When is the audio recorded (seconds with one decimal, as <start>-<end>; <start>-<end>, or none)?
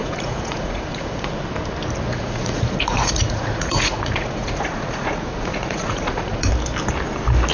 1.3-2.1; 6.5-7.5